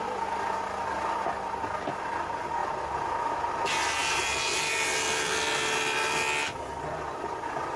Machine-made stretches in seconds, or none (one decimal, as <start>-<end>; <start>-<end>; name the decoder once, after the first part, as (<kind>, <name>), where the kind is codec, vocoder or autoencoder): 4.0-6.2 (vocoder, BigVGAN v2)